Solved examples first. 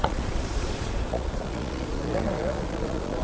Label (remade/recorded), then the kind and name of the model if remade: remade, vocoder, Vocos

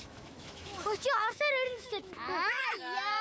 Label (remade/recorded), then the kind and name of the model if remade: remade, autoencoder, DAC-VAE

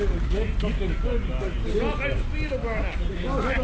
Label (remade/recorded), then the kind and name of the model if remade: recorded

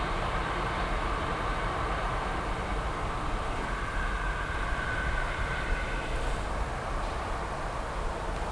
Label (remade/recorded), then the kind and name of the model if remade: recorded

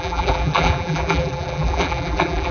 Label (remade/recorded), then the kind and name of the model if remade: remade, vocoder, BigVGAN v2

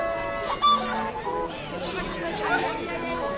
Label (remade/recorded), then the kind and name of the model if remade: recorded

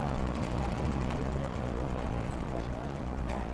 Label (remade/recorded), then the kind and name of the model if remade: remade, vocoder, Vocos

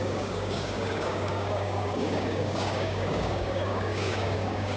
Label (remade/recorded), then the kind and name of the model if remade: remade, codec, DAC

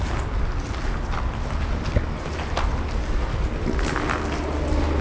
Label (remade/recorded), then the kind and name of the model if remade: recorded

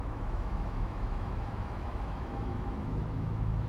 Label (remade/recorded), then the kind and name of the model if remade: remade, autoencoder, DAC-VAE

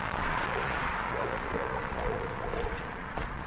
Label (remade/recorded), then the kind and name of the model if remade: remade, vocoder, Vocos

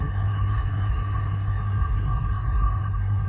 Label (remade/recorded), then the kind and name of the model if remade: remade, codec, SNAC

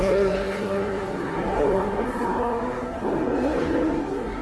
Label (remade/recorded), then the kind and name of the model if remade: remade, codec, SNAC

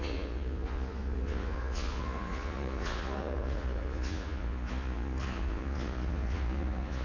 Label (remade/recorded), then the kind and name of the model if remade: remade, vocoder, Vocos